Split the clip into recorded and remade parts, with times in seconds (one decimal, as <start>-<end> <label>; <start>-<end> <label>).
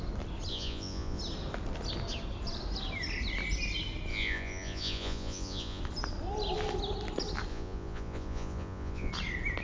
0.0-0.5 recorded; 0.5-1.2 remade; 1.2-4.1 recorded; 4.1-5.8 remade; 5.8-7.5 recorded; 7.5-9.1 remade; 9.1-9.6 recorded